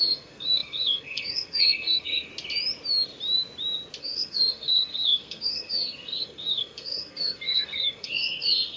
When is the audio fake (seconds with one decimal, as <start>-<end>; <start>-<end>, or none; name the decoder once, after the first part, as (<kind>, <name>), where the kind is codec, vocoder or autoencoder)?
0.0-2.3 (codec, SNAC); 4.0-8.8